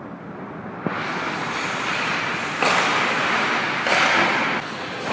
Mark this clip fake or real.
real